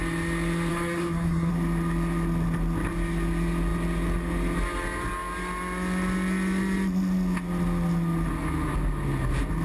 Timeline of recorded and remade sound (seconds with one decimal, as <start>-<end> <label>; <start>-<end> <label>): 0.0-0.7 recorded; 0.7-1.5 remade; 1.5-9.6 recorded